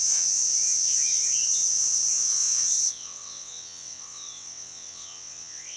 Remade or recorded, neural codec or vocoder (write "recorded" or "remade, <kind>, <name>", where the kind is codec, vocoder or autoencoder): remade, vocoder, WaveNeXt